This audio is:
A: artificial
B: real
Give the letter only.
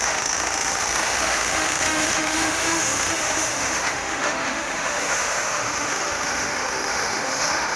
A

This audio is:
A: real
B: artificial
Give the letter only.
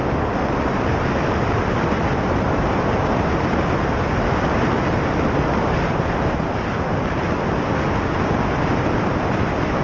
A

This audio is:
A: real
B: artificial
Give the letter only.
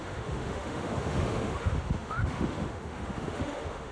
B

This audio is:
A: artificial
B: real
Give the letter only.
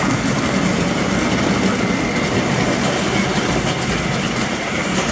B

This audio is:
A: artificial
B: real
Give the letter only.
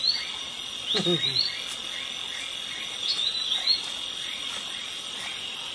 B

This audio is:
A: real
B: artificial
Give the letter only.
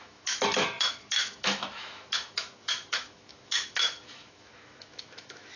B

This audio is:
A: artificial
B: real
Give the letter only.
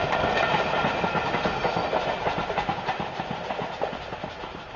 B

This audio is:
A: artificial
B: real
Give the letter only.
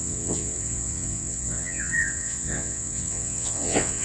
A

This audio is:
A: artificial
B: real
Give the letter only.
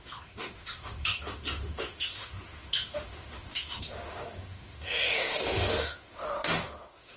A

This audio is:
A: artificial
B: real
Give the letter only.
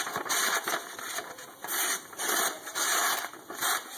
A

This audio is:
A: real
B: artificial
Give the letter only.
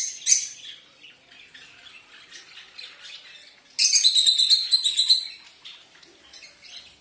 A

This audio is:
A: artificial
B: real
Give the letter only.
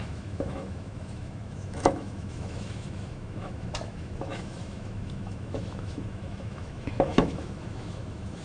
A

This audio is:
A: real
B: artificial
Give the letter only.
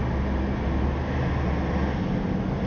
A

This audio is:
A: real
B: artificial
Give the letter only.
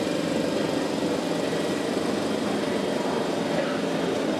A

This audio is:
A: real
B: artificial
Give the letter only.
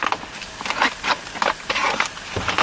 A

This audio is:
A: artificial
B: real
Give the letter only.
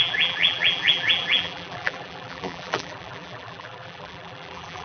A